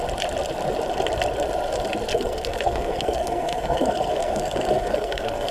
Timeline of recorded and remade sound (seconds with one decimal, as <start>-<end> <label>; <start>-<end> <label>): 0.0-2.1 recorded; 2.1-5.5 remade